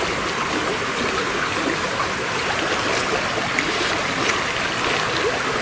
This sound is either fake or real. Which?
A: real